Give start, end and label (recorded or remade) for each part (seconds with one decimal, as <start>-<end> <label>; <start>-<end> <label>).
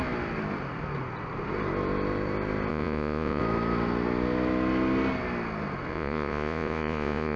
0.0-2.7 recorded; 2.7-3.4 remade; 3.4-5.9 recorded; 5.9-7.4 remade